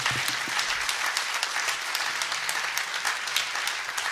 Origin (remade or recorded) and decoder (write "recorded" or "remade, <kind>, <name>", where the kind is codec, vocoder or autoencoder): recorded